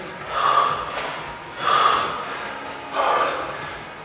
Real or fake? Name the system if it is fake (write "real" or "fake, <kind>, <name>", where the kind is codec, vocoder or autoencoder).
real